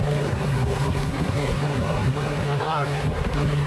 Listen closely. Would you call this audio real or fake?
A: fake